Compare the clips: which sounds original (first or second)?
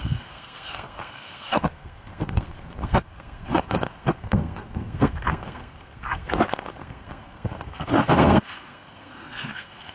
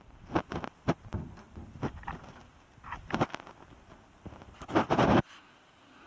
second